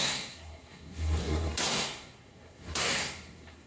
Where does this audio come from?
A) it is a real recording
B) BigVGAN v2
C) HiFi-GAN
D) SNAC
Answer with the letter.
D